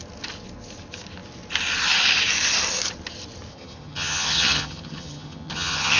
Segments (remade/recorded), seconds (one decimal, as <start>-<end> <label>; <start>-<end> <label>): 0.0-3.5 recorded; 3.5-6.0 remade